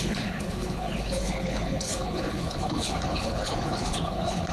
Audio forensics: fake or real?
fake